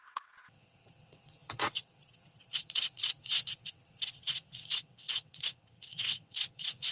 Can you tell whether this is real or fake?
fake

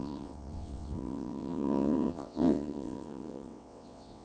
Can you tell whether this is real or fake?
fake